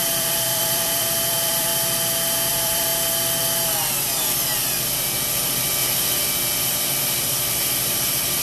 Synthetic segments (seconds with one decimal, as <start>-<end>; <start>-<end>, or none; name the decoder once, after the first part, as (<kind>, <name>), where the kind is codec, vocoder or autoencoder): 0.0-1.7 (vocoder, BigVGAN v2); 2.5-2.9; 7.0-8.4